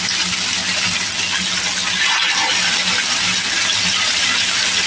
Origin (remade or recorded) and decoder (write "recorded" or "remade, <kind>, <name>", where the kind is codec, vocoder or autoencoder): recorded